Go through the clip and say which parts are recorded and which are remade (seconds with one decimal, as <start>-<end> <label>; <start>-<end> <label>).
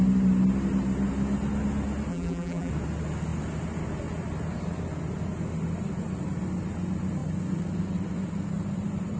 0.0-2.1 recorded; 2.1-2.7 remade; 2.7-9.2 recorded